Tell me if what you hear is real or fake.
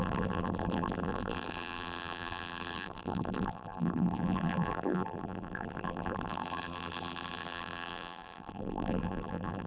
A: fake